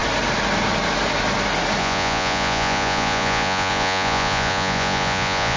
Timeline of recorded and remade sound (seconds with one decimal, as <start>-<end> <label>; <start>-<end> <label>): 0.0-1.8 recorded; 1.8-5.6 remade